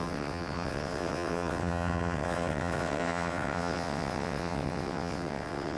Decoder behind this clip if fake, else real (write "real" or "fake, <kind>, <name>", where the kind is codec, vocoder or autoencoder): fake, vocoder, WaveNeXt